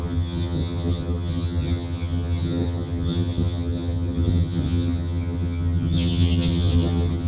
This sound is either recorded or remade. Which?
remade